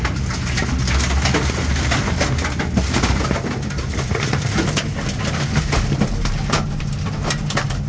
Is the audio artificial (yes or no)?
no